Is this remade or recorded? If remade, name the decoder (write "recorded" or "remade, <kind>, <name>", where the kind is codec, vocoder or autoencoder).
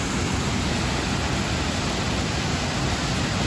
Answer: recorded